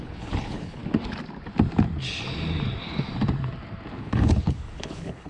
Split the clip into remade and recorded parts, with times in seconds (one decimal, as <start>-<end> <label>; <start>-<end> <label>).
0.0-0.8 remade; 0.8-4.0 recorded; 4.0-5.3 remade